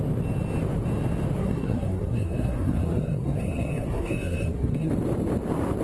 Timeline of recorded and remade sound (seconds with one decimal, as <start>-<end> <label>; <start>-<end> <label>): 0.0-1.4 recorded; 1.4-4.9 remade; 4.9-5.8 recorded